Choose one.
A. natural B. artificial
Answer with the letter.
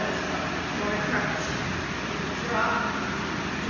A